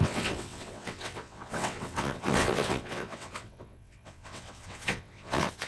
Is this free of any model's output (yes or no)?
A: no